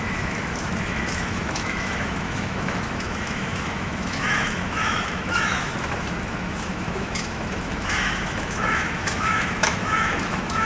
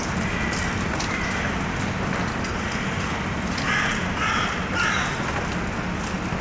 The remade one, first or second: first